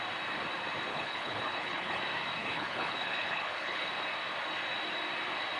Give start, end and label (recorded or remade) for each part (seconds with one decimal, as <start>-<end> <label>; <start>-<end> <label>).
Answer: 0.0-0.9 recorded; 0.9-2.0 remade; 2.0-2.4 recorded; 2.4-3.9 remade; 3.9-5.6 recorded